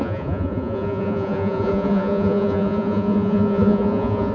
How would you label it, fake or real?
fake